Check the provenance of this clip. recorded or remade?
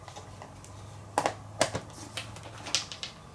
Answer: recorded